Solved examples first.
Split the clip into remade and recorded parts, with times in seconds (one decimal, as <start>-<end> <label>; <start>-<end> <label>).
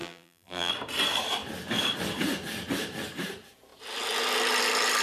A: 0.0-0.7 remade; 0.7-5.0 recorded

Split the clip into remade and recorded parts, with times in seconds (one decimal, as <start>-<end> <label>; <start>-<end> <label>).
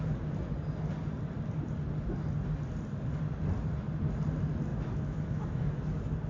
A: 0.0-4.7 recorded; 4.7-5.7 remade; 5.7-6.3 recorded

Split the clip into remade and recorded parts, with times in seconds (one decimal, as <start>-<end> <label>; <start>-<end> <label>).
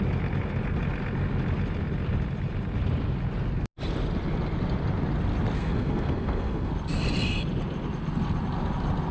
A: 0.0-5.6 recorded; 5.6-6.7 remade; 6.7-9.1 recorded